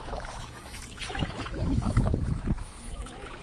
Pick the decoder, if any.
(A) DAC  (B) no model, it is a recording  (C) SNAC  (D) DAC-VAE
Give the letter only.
D